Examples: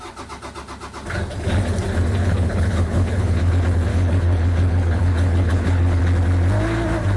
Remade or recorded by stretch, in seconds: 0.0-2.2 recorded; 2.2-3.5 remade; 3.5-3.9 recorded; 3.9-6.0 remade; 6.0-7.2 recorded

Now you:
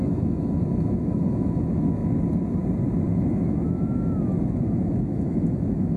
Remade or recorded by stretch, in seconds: 0.0-2.0 remade; 2.0-3.3 recorded; 3.3-4.3 remade; 4.3-4.8 recorded; 4.8-6.0 remade

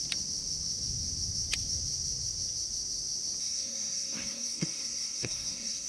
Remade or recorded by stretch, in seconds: 0.0-3.4 recorded; 3.4-5.9 remade

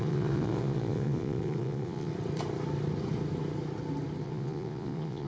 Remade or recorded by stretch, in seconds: 0.0-2.1 remade; 2.1-4.2 recorded; 4.2-5.3 remade